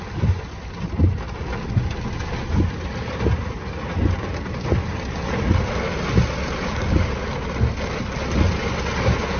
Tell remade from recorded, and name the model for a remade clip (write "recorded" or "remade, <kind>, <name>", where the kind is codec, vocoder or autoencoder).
recorded